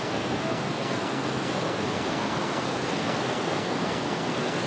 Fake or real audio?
fake